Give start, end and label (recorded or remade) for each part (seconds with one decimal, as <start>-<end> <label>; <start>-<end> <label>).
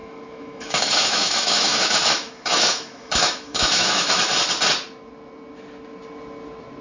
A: 0.0-4.1 remade; 4.1-6.8 recorded